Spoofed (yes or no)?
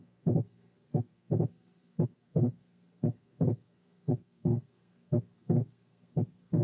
yes